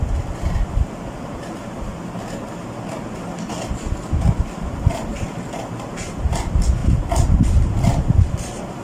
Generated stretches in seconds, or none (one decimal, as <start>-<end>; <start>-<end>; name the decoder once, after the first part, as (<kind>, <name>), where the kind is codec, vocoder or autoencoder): 0.0-1.9 (vocoder, BigVGAN v2); 4.6-8.8